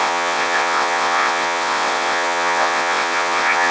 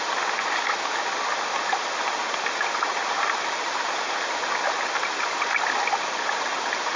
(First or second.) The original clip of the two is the second